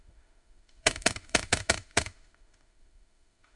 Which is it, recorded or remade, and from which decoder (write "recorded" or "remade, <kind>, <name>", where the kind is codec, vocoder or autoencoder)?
remade, autoencoder, DAC-VAE